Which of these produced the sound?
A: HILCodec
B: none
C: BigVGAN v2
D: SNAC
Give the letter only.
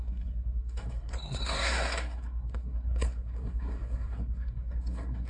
D